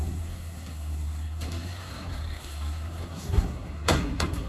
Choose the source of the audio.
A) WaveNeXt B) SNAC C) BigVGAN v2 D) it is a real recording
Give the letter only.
B